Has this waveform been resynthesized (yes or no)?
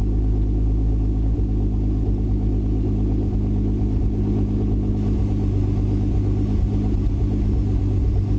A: no